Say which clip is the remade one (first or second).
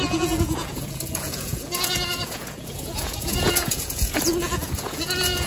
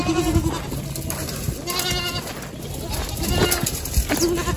first